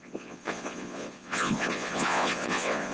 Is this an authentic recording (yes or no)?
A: no